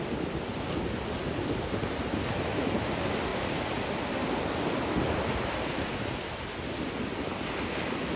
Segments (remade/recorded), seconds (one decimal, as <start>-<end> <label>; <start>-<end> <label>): 0.0-3.3 recorded; 3.3-5.6 remade; 5.6-8.2 recorded